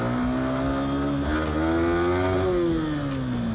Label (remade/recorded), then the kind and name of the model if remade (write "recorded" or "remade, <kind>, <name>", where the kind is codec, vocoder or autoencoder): recorded